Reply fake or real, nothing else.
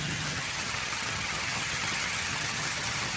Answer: fake